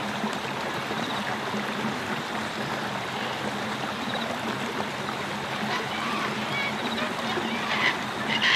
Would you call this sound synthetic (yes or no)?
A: no